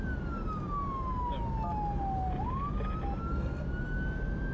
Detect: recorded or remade recorded